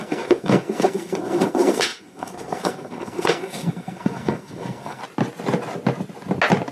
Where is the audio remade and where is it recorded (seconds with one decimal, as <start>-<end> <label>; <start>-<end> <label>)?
0.0-5.0 remade; 5.0-6.7 recorded